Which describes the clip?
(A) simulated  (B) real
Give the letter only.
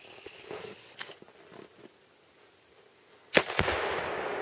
B